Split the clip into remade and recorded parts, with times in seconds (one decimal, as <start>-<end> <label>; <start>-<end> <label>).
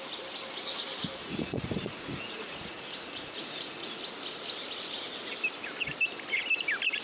0.0-1.2 recorded; 1.2-4.0 remade; 4.0-7.0 recorded